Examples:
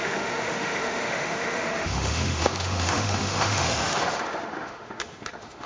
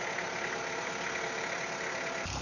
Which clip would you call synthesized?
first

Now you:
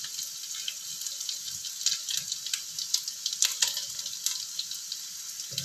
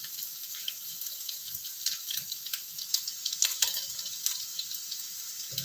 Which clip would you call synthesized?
second